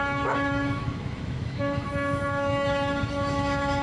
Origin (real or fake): fake